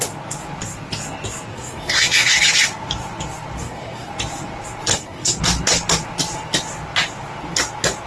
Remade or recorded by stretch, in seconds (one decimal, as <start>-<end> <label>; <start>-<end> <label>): 0.0-1.5 recorded; 1.5-2.4 remade; 2.4-3.6 recorded; 3.6-4.1 remade; 4.1-4.9 recorded; 4.9-5.4 remade; 5.4-8.1 recorded